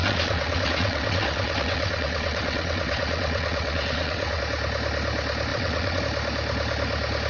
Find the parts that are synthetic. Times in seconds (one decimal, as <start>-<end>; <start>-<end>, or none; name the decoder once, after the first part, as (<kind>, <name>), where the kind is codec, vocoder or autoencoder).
0.0-4.4 (vocoder, WaveNeXt); 5.5-6.0